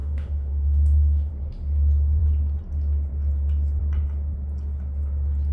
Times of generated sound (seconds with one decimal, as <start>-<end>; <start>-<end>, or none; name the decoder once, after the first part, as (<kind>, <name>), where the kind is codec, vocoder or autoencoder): 0.0-1.3 (autoencoder, DAC-VAE)